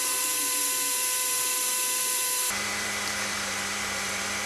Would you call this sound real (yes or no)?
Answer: no